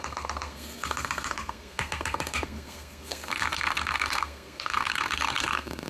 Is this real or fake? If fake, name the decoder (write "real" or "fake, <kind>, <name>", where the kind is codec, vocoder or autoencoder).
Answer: fake, codec, SNAC